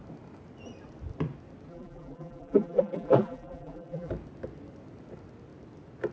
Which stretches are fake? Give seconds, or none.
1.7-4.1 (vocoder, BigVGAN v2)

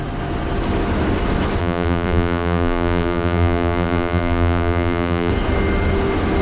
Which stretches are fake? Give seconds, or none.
1.6-5.3 (vocoder, BigVGAN v2)

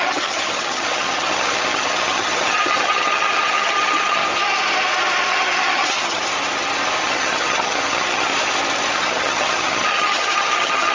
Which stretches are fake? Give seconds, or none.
0.0-4.2 (vocoder, HiFi-GAN); 5.3-6.2; 7.0-8.3; 8.9-10.9

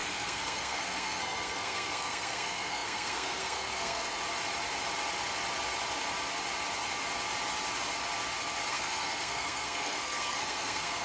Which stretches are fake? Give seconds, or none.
0.0-4.2 (codec, SNAC); 8.7-11.0

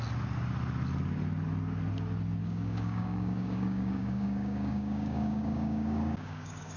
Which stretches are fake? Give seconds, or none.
2.4-6.8 (codec, DAC)

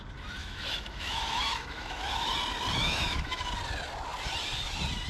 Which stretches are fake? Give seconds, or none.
0.4-2.3 (autoencoder, DAC-VAE); 2.8-3.4

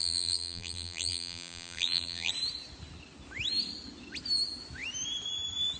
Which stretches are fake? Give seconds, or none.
0.0-2.3 (vocoder, BigVGAN v2)

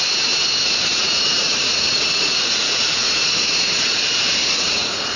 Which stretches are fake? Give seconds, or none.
0.9-4.0 (vocoder, Vocos); 4.4-5.2